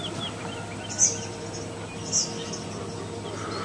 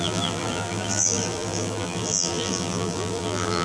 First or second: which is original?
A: first